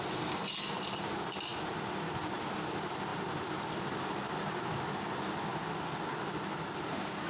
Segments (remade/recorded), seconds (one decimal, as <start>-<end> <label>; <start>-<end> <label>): 0.0-7.3 recorded